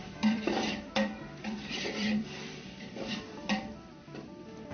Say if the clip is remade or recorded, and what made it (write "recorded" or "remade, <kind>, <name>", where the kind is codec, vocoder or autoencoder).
remade, vocoder, BigVGAN v2